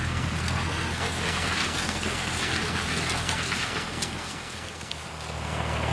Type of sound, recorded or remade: remade